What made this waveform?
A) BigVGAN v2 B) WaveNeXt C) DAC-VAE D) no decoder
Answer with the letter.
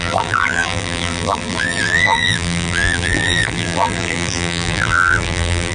A